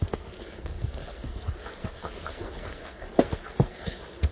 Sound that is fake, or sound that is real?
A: fake